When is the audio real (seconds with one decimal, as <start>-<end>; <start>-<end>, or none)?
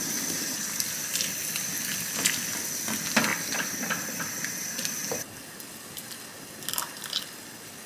0.0-7.9